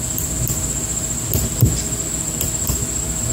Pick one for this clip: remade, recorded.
recorded